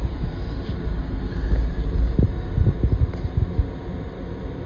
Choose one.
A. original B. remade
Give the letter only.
A